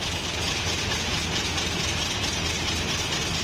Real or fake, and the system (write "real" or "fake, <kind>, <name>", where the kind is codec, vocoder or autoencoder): real